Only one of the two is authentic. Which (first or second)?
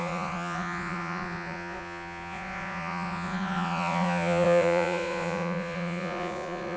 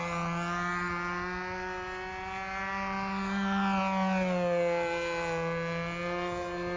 second